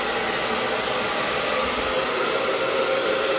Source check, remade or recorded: recorded